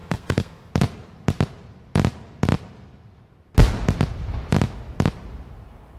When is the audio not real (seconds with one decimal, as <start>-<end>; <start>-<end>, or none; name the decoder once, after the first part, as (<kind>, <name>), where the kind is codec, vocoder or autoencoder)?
0.0-0.7 (codec, SNAC)